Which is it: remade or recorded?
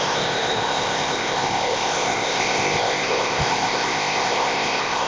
remade